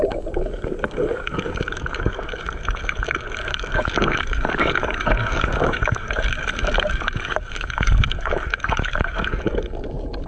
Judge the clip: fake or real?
fake